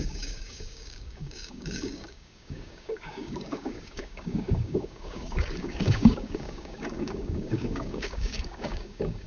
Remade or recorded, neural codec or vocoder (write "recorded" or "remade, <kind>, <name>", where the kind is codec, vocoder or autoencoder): remade, codec, DAC